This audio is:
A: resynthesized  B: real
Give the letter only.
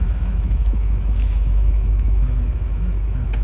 A